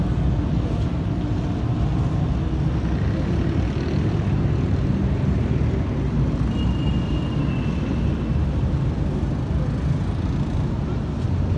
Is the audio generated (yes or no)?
no